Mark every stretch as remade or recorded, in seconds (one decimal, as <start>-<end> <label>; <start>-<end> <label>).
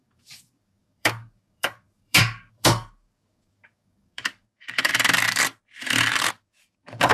0.0-4.9 remade; 4.9-6.3 recorded; 6.3-7.1 remade